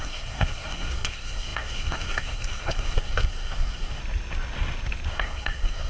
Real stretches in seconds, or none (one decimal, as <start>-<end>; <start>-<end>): 4.0-5.1